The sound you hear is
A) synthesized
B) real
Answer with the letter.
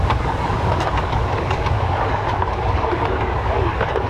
A